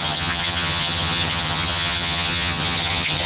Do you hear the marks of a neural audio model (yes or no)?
yes